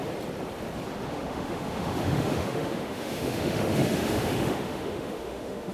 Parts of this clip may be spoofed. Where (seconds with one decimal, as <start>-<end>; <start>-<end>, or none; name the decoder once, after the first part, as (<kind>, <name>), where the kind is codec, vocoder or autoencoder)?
1.1-5.7 (autoencoder, DAC-VAE)